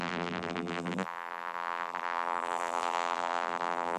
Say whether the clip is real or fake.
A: fake